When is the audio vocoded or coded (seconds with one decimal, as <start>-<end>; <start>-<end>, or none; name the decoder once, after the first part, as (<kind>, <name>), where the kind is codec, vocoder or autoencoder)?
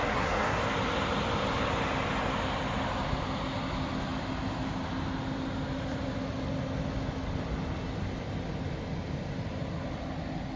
0.0-0.6 (codec, SNAC)